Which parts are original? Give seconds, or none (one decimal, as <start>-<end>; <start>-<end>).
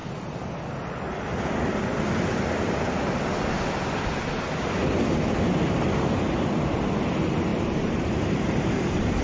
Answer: 0.0-7.5